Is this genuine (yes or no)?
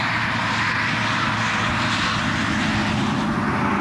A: yes